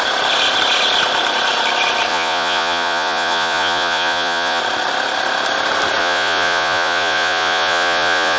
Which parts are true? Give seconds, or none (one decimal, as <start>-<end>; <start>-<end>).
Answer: 0.0-2.1; 4.6-6.0